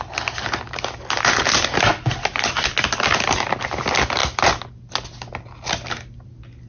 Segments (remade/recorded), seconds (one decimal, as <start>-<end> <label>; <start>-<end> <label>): 0.0-6.7 recorded